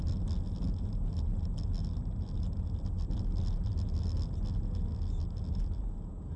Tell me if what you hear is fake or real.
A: real